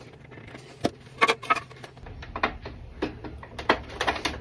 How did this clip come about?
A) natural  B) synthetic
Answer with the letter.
A